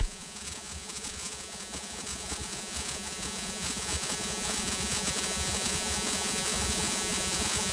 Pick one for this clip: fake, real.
fake